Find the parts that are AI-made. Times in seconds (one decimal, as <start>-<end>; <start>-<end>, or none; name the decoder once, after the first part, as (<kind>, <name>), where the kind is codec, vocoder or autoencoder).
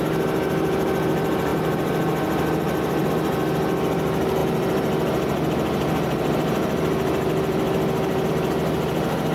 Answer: none